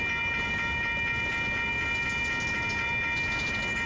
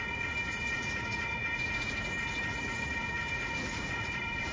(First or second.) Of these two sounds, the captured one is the first